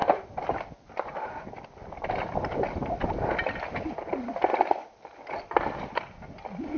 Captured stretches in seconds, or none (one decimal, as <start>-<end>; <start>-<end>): 0.0-6.8